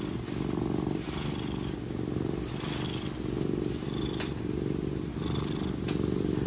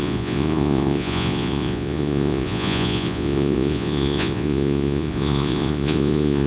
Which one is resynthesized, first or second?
second